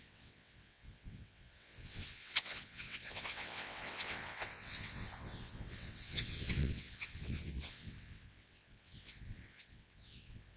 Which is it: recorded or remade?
remade